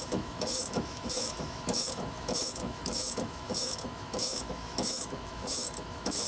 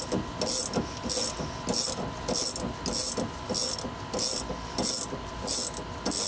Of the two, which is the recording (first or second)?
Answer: second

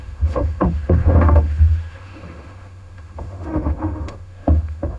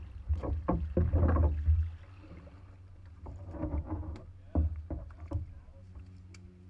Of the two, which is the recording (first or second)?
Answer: second